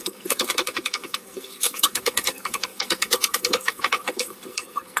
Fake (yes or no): yes